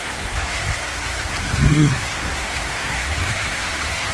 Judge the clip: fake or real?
fake